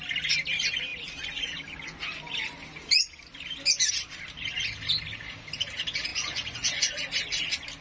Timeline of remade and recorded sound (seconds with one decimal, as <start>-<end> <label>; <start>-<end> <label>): 0.0-6.1 recorded; 6.1-6.9 remade; 6.9-7.8 recorded